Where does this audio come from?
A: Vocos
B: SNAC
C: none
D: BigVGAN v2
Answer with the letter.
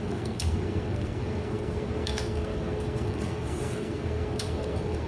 B